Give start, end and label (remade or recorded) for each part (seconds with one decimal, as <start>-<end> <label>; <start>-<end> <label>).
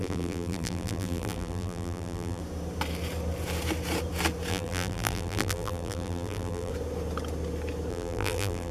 0.0-2.4 remade; 2.4-4.5 recorded; 4.5-6.7 remade; 6.7-7.9 recorded; 7.9-8.7 remade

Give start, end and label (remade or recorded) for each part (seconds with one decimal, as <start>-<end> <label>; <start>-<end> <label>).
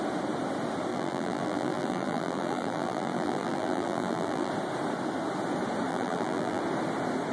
0.0-0.9 recorded; 0.9-4.5 remade; 4.5-5.9 recorded; 5.9-6.6 remade; 6.6-7.3 recorded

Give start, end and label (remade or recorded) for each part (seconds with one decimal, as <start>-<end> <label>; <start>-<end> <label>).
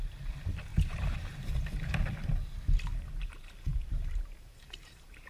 0.0-0.7 recorded; 0.7-1.7 remade; 1.7-2.9 recorded; 2.9-5.3 remade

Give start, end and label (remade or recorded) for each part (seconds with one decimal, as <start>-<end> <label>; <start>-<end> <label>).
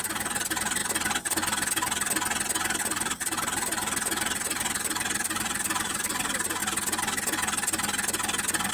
0.0-0.8 remade; 0.8-2.8 recorded; 2.8-6.6 remade; 6.6-8.7 recorded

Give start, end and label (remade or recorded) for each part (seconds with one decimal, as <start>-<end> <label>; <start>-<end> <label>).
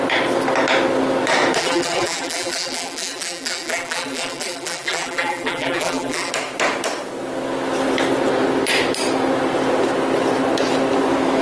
0.0-1.6 recorded; 1.6-6.3 remade; 6.3-11.4 recorded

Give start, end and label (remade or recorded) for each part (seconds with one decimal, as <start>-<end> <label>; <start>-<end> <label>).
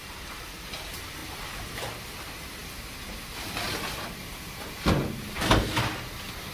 0.0-0.7 remade; 0.7-6.5 recorded